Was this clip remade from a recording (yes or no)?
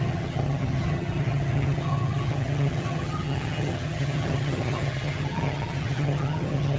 yes